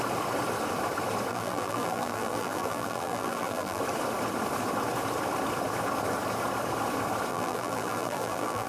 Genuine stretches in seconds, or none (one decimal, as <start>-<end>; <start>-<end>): 0.0-1.3; 3.8-7.3

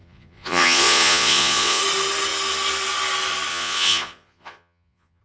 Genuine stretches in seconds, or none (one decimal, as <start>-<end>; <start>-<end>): 1.8-3.5

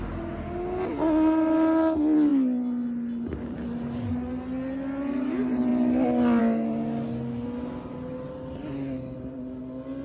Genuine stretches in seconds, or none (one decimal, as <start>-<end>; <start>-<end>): 0.0-10.0

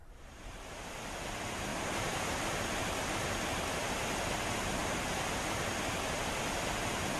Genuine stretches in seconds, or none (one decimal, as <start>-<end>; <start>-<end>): 0.7-1.7; 2.5-7.2